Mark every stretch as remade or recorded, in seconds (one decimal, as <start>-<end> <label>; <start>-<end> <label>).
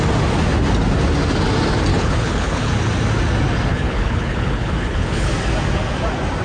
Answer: 0.0-1.9 recorded; 1.9-2.7 remade; 2.7-3.7 recorded; 3.7-5.3 remade; 5.3-6.4 recorded